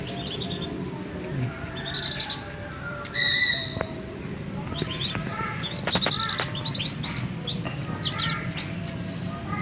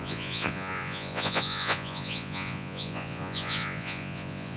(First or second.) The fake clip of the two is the second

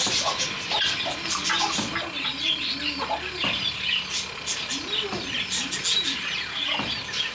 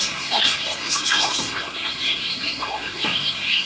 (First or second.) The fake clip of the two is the second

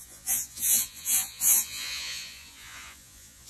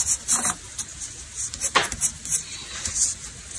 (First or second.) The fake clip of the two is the first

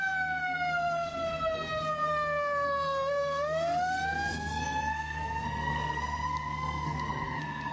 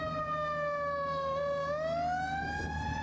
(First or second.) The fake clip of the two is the first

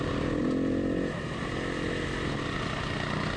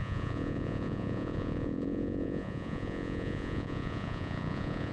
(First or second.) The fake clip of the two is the second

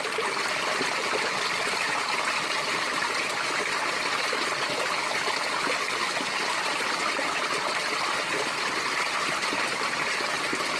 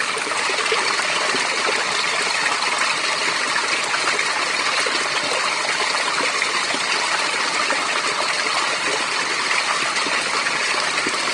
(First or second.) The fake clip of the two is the second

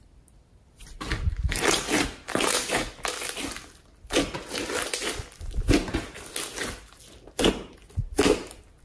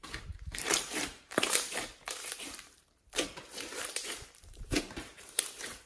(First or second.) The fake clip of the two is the second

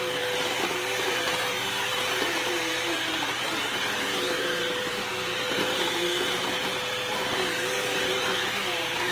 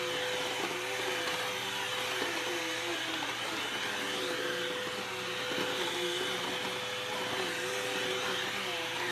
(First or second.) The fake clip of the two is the first